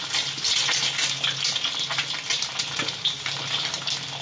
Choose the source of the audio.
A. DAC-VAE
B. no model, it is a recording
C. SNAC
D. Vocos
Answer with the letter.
B